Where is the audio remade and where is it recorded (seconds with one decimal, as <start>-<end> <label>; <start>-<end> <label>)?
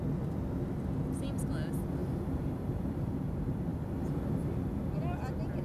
0.0-2.0 recorded; 2.0-2.9 remade; 2.9-3.7 recorded; 3.7-4.3 remade; 4.3-5.6 recorded